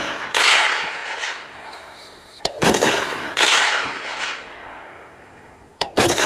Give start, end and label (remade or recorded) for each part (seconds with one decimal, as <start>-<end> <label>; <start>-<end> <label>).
0.0-6.3 remade